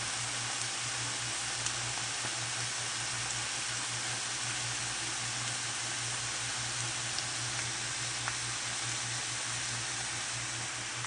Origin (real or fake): real